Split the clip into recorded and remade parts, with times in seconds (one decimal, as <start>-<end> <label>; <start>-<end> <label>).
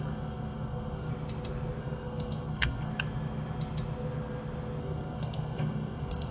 0.0-1.1 remade; 1.1-1.8 recorded; 1.8-2.9 remade; 2.9-4.8 recorded; 4.8-6.3 remade